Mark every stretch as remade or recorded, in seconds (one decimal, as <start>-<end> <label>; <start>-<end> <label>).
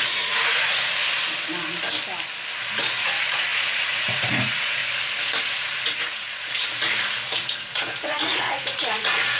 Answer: 0.0-1.0 remade; 1.0-2.7 recorded; 2.7-4.8 remade; 4.8-5.4 recorded; 5.4-9.4 remade